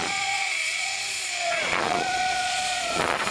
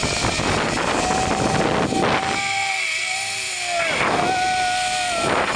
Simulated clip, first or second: first